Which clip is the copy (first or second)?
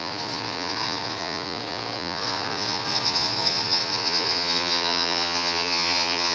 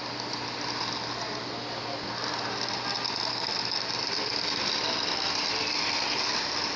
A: first